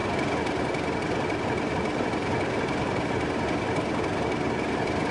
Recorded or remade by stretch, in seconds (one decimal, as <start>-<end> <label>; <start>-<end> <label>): 0.0-5.1 recorded